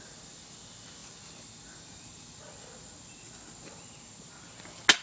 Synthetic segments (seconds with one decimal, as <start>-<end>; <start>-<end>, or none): none